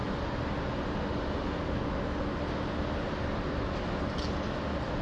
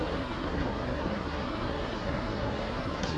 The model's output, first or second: second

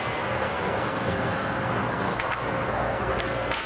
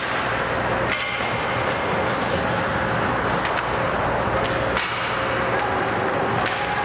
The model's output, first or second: first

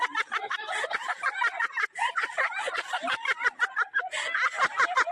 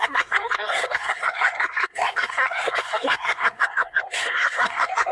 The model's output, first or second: second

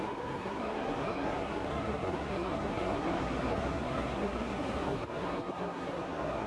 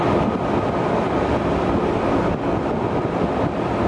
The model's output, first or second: first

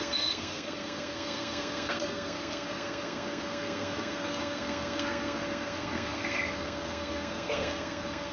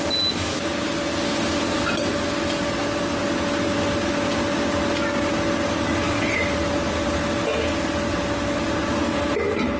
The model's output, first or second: first